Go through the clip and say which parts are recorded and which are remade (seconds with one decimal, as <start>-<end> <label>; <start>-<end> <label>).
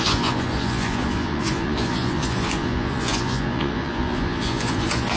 0.0-5.2 remade